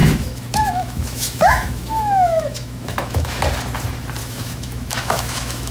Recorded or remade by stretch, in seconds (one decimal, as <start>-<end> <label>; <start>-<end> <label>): 0.0-3.4 remade; 3.4-4.2 recorded; 4.2-5.7 remade